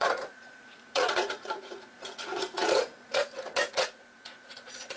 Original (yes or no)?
no